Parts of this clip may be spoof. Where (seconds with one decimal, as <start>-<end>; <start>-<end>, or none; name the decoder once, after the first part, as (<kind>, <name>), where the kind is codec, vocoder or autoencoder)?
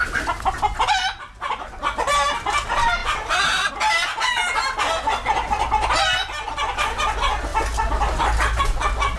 none